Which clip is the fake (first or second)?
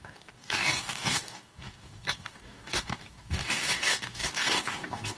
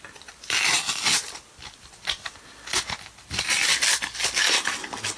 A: first